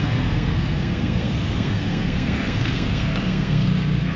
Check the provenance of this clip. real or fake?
fake